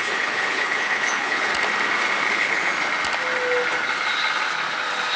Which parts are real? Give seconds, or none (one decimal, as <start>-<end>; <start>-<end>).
1.5-2.3; 2.7-5.2